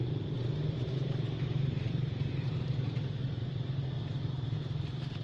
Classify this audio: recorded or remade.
remade